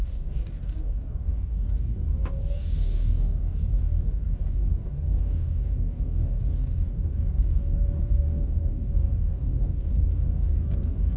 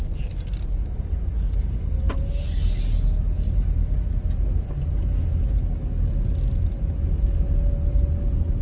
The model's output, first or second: first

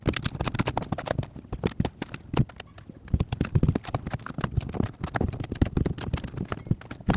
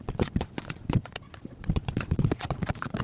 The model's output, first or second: second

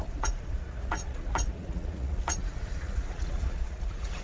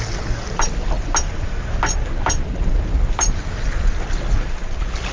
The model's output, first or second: first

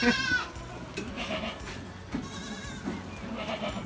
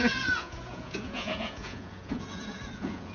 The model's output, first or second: second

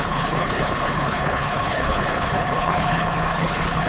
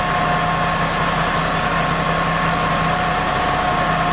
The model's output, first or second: first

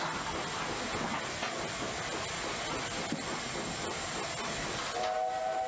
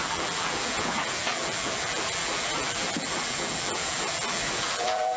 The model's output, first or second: second